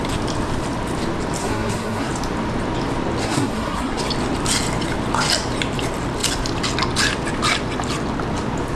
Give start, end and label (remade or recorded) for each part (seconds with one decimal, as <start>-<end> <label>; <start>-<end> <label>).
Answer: 0.0-1.4 recorded; 1.4-2.1 remade; 2.1-3.2 recorded; 3.2-4.0 remade; 4.0-8.8 recorded